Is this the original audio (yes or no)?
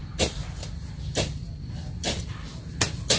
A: yes